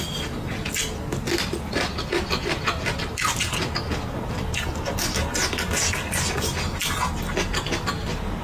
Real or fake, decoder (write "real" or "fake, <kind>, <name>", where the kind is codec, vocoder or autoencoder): real